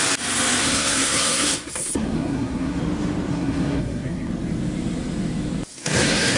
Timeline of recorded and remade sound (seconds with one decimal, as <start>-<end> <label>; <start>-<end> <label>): 0.0-0.6 recorded; 0.6-2.8 remade; 2.8-3.3 recorded; 3.3-4.3 remade; 4.3-5.7 recorded; 5.7-6.4 remade